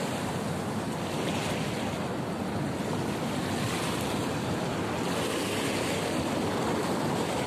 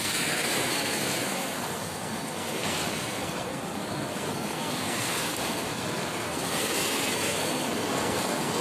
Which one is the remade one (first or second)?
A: second